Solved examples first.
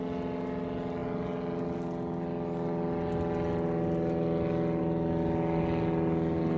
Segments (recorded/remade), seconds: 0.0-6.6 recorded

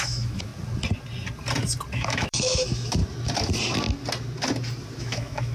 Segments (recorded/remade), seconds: 0.0-0.5 remade; 0.5-1.9 recorded; 1.9-3.0 remade; 3.0-5.0 recorded; 5.0-5.5 remade

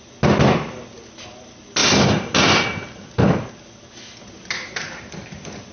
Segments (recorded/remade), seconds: 0.0-5.7 recorded

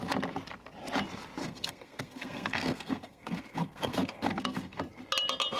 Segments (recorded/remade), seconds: 0.0-1.4 recorded; 1.4-4.8 remade; 4.8-5.6 recorded